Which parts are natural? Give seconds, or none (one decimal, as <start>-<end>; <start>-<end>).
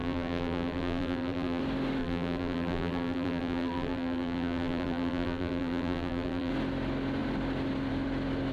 1.6-2.0; 6.5-8.5